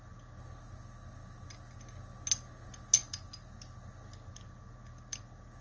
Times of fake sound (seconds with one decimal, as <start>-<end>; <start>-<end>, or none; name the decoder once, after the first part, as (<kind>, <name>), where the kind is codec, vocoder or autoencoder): none